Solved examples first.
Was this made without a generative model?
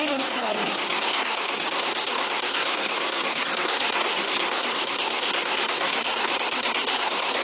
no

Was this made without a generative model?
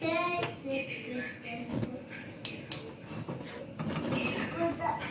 yes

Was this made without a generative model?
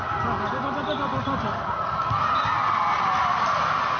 yes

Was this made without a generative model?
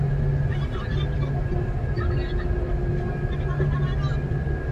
yes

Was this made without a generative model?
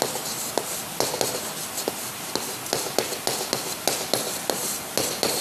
yes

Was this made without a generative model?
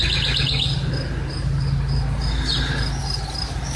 yes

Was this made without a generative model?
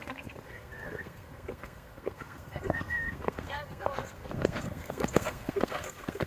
no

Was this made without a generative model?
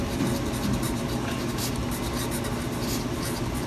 yes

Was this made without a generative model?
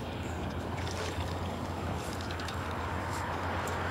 no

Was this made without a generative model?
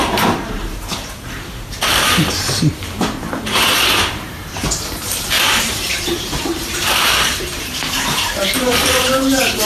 no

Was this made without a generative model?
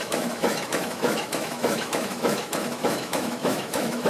no